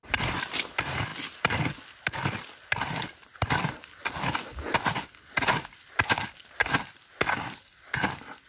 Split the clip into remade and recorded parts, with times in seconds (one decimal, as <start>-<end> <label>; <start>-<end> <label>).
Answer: 0.0-8.5 recorded